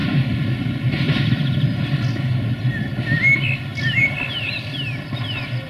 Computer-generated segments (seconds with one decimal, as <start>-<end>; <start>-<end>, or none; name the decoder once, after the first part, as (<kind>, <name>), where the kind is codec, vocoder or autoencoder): 0.0-1.9 (vocoder, BigVGAN v2); 3.7-4.6